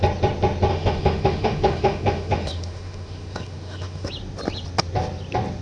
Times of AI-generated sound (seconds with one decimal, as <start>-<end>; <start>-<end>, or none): 0.7-4.1